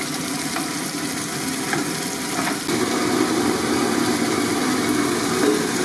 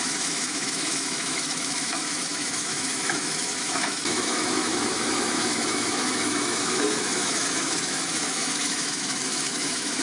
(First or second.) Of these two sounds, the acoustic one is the first